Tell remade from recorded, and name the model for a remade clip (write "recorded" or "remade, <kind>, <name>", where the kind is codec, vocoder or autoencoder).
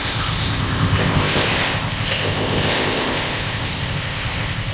remade, codec, ZipCodec